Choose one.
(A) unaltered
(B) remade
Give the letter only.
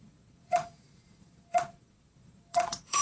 B